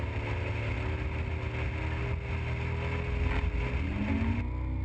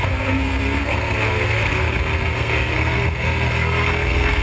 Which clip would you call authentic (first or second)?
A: first